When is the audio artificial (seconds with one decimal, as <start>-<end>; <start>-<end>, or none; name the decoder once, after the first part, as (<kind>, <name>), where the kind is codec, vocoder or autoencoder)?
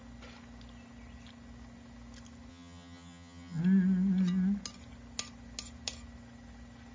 2.5-3.6 (vocoder, HiFi-GAN)